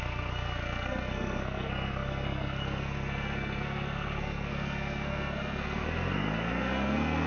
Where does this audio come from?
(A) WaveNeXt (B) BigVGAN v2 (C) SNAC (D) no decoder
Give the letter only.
C